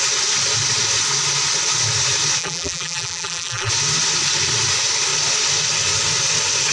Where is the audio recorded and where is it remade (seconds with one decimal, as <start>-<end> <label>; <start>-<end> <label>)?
0.0-2.4 recorded; 2.4-3.7 remade; 3.7-6.7 recorded